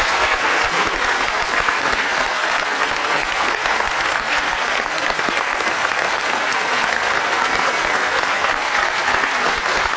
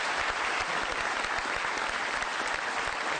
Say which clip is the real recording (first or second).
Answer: second